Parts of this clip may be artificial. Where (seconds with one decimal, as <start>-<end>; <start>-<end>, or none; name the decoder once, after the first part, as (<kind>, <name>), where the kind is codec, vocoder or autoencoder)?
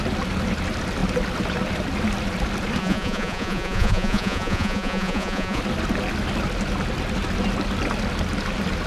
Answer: 2.8-5.6 (vocoder, Vocos)